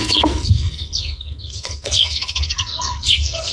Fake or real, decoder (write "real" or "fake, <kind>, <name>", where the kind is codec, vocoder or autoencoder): fake, codec, SNAC